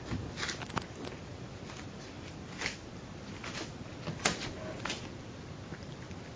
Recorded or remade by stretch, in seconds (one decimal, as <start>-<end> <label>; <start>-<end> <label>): 0.0-6.4 recorded